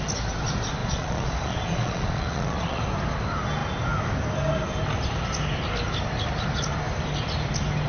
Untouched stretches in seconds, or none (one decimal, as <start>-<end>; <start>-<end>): 0.0-0.8; 2.8-7.9